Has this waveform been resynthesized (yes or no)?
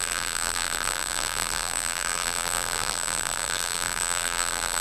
yes